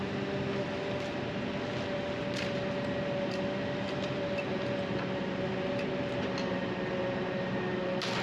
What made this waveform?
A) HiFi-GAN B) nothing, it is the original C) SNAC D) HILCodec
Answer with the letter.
B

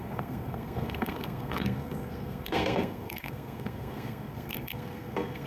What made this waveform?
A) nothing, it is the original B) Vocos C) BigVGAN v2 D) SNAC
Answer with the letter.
D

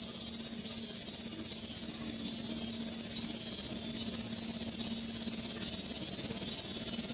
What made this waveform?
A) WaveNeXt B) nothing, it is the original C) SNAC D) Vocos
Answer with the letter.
B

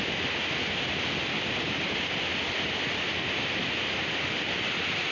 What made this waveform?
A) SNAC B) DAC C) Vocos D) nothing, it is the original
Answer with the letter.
D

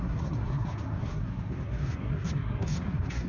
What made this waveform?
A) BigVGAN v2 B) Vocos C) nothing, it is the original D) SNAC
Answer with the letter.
D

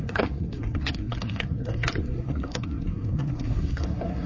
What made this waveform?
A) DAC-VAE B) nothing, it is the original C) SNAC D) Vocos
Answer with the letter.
C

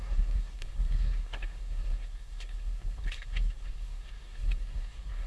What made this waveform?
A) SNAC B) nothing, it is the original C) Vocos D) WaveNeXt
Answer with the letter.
A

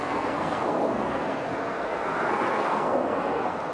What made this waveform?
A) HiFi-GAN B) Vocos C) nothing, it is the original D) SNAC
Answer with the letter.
D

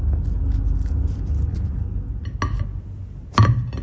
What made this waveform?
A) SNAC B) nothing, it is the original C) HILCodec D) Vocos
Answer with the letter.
B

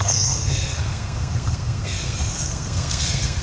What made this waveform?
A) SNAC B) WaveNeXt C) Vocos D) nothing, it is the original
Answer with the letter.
A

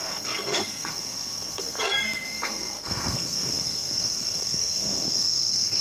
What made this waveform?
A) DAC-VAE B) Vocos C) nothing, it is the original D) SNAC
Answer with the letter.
D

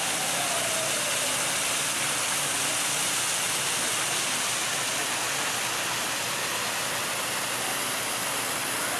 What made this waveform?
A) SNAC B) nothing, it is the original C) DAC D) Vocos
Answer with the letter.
B